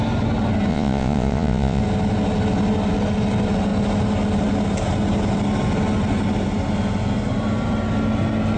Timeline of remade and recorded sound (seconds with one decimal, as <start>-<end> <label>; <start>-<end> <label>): 0.0-0.7 recorded; 0.7-1.8 remade; 1.8-8.6 recorded